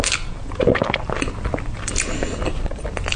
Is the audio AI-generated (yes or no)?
no